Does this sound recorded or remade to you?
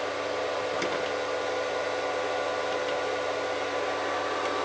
recorded